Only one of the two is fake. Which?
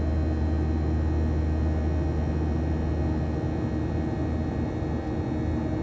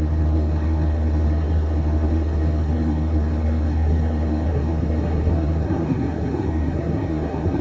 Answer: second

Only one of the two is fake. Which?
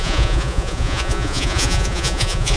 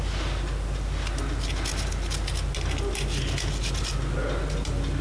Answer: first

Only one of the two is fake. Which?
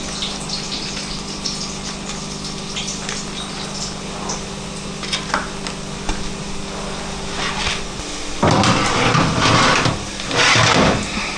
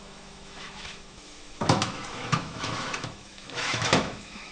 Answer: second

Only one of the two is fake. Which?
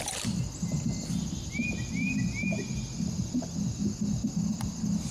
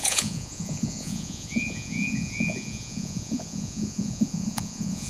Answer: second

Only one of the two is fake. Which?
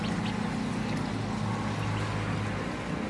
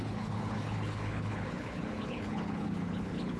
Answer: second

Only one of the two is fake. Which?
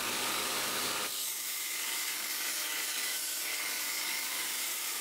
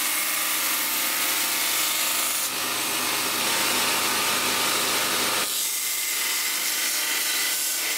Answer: first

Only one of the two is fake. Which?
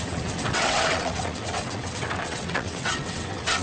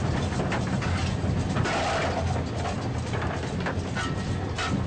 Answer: first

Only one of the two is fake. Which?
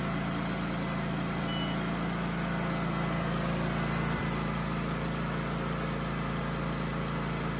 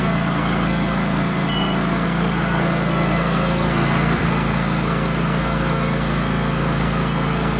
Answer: second